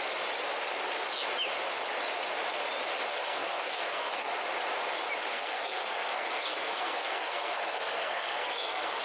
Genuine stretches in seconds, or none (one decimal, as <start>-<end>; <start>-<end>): 0.0-3.1; 4.3-5.3